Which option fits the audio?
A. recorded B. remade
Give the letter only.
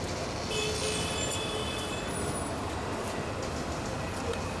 A